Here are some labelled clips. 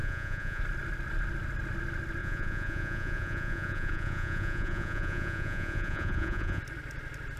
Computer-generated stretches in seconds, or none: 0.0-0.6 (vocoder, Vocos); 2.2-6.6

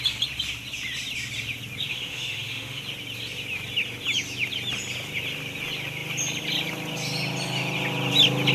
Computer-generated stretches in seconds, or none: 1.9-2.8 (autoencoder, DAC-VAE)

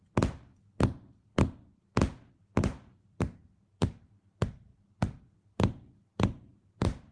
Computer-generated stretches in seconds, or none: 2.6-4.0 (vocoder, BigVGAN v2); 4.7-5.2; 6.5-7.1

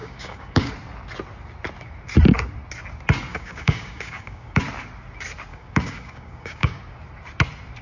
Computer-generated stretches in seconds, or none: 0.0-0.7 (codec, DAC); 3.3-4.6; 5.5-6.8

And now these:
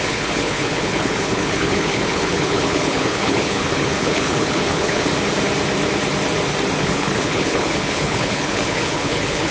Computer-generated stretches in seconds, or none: 0.0-5.1 (codec, HILCodec); 6.8-9.5

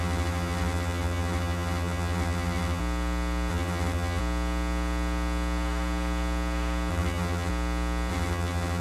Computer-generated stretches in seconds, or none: 0.0-2.8 (vocoder, BigVGAN v2); 3.5-4.2; 6.9-7.5; 8.1-8.8